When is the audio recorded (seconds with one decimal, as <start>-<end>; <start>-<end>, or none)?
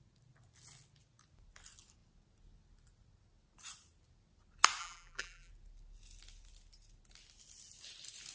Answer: 0.0-4.8; 5.5-8.3